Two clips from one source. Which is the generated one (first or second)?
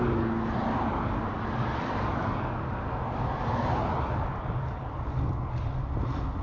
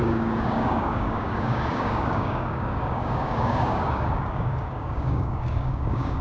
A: second